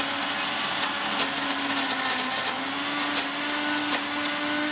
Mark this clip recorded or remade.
recorded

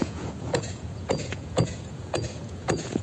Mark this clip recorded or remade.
remade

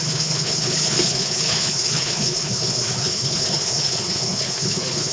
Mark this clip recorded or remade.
remade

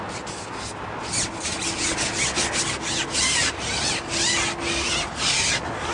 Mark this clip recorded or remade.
recorded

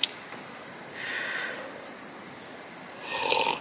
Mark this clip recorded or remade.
recorded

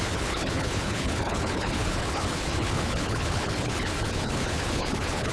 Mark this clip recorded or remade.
remade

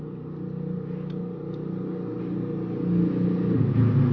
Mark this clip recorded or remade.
recorded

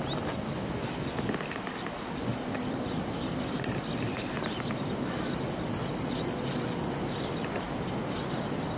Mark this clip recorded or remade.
recorded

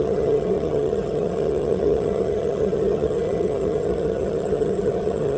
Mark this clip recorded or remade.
remade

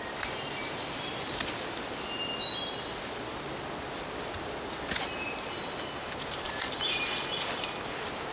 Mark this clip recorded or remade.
recorded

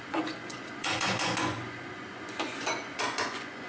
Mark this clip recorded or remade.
remade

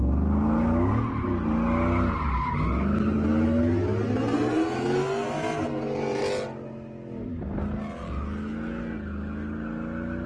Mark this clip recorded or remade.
recorded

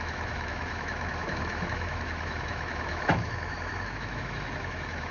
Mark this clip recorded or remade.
remade